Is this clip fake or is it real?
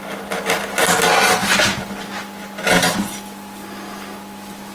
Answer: real